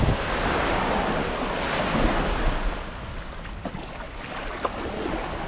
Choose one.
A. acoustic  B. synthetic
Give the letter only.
A